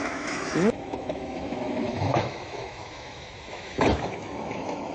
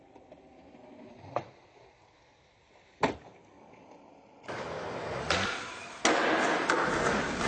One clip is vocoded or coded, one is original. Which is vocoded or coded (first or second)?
first